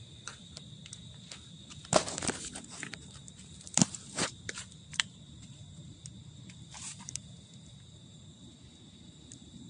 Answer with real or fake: fake